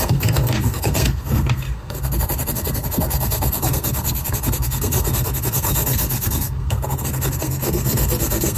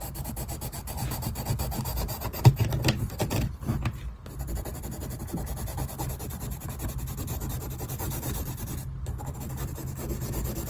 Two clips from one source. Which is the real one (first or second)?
second